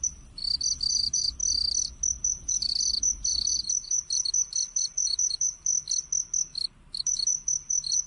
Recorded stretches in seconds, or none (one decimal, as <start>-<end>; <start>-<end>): 0.4-0.9; 1.4-2.2; 5.7-7.0